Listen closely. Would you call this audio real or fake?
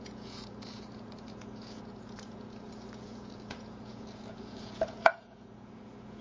fake